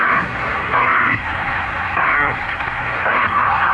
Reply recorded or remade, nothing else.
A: remade